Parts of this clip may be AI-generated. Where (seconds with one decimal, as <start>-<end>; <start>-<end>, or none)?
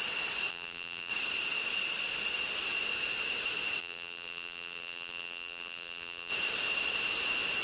0.5-1.1; 3.8-6.3